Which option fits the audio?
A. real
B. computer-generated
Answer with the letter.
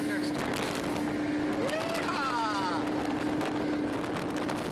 A